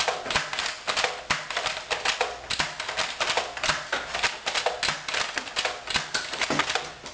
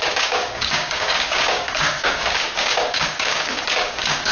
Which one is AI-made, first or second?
second